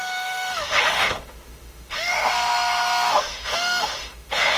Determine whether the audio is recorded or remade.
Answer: remade